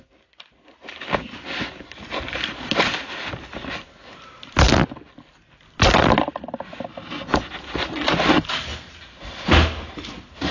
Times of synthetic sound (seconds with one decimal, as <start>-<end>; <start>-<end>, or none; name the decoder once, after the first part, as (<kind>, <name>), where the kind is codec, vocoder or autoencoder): none